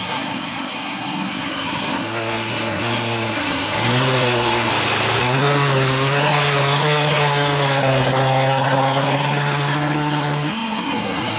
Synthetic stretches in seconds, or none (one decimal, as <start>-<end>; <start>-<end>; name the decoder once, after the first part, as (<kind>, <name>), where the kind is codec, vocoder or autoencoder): 0.0-4.7 (codec, SNAC); 5.2-11.4